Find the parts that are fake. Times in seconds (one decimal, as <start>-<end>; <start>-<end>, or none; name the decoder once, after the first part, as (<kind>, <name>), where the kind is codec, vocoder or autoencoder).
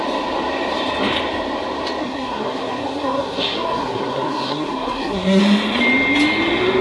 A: 2.0-5.4 (codec, SNAC)